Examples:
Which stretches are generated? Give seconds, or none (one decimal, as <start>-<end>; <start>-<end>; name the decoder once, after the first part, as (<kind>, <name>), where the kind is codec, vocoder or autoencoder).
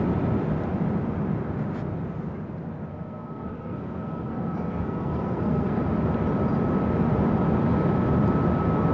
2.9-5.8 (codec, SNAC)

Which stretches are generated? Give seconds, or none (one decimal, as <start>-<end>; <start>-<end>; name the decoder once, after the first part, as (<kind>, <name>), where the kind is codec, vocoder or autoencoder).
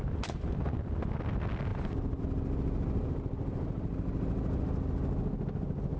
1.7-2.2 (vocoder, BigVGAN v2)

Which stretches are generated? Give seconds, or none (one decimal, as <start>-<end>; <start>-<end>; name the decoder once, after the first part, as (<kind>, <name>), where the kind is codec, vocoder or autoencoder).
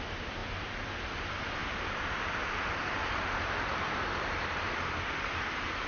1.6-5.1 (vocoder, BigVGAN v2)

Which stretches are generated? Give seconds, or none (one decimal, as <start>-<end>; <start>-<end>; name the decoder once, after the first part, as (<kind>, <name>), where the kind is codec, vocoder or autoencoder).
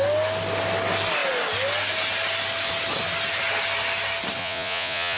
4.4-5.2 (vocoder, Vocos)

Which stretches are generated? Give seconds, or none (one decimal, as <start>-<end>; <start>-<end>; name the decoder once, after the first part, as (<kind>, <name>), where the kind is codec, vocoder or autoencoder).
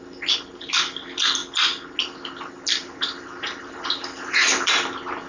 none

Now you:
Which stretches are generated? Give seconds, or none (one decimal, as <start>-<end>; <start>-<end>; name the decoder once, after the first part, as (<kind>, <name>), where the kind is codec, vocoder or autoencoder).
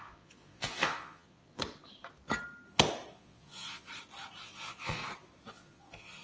0.0-1.6 (vocoder, Vocos); 3.1-3.9; 4.4-5.0; 5.5-6.2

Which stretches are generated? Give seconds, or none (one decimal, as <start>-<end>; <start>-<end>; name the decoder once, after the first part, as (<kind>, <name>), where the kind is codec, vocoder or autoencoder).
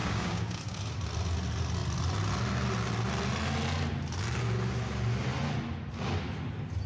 0.0-0.8 (codec, DAC)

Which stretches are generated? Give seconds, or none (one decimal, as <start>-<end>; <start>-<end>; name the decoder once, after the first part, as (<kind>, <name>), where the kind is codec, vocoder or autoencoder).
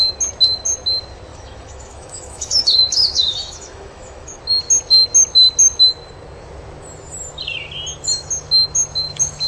1.3-4.4 (autoencoder, DAC-VAE)